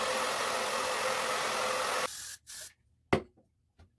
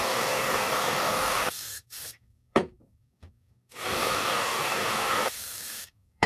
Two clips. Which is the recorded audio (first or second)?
first